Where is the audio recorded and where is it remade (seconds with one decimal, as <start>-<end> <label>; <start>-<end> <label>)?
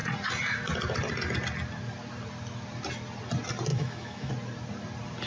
0.0-3.7 recorded; 3.7-4.3 remade; 4.3-5.3 recorded